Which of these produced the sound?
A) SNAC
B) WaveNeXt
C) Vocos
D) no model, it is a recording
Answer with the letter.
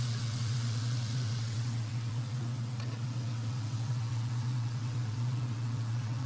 B